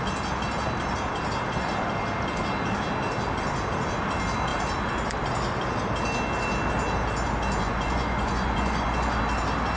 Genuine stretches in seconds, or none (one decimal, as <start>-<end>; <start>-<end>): 0.0-7.6; 9.2-9.8